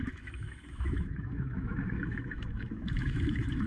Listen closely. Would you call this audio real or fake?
fake